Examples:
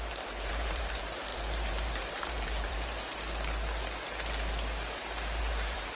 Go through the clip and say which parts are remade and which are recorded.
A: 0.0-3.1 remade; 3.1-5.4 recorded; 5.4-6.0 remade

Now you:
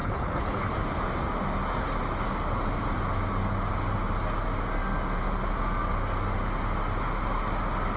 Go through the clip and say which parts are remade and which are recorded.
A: 0.0-0.7 remade; 0.7-8.0 recorded

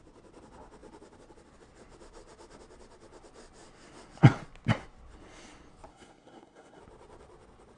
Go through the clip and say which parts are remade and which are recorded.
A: 0.0-5.9 recorded; 5.9-6.8 remade; 6.8-7.8 recorded

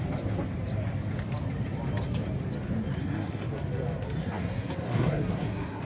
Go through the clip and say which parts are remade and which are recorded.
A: 0.0-3.0 recorded; 3.0-3.5 remade; 3.5-4.2 recorded; 4.2-5.8 remade